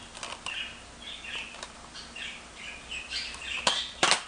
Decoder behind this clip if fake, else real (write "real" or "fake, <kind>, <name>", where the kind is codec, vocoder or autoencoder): real